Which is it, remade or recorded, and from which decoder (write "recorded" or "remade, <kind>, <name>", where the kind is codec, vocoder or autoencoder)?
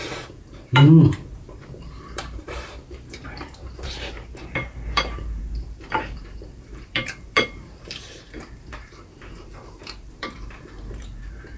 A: remade, vocoder, BigVGAN v2